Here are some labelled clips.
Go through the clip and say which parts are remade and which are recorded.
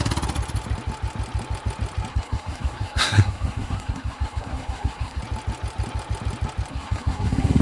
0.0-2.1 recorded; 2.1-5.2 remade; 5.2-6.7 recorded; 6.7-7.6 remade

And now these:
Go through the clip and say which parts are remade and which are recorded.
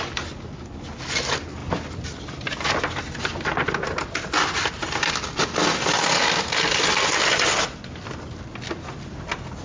0.0-9.6 recorded